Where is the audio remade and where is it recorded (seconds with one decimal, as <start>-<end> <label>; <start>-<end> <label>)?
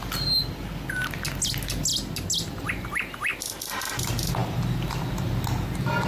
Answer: 0.0-1.9 recorded; 1.9-2.7 remade; 2.7-3.3 recorded; 3.3-3.9 remade; 3.9-4.4 recorded; 4.4-5.1 remade; 5.1-6.1 recorded